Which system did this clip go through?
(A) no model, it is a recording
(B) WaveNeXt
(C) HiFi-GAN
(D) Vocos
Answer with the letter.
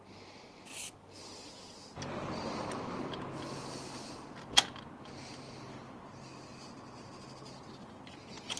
A